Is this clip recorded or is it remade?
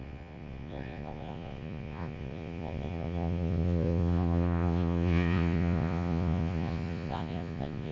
remade